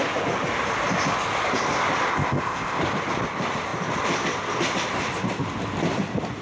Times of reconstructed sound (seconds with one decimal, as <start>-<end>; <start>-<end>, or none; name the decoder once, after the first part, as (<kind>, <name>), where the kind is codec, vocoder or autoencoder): 2.1-2.8 (codec, ZipCodec)